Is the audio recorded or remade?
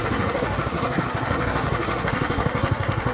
remade